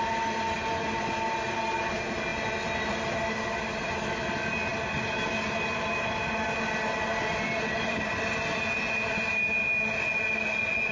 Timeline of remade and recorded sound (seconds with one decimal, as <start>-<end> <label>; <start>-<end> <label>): 0.0-10.9 recorded